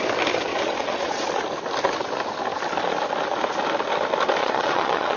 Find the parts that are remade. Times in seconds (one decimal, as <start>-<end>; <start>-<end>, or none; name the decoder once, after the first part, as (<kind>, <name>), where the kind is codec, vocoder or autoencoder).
0.5-1.3 (vocoder, Vocos); 4.4-5.2